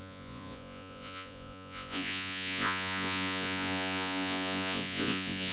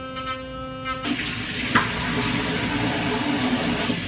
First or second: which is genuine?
second